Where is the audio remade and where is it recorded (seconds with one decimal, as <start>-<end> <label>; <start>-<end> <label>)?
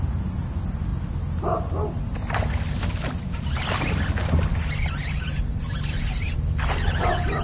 0.0-7.4 recorded